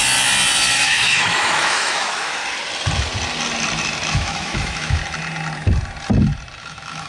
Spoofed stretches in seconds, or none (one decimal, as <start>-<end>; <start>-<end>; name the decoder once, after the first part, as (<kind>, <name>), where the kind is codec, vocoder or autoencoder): 0.8-2.4 (autoencoder, DAC-VAE); 4.1-5.0; 6.6-7.1